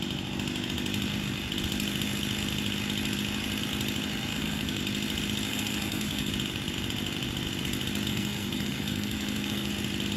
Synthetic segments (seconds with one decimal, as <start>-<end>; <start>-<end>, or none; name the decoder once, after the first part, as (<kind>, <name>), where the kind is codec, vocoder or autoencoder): 4.3-4.8 (codec, SNAC); 5.5-6.3; 8.1-9.7